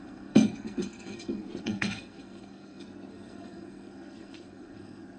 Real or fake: fake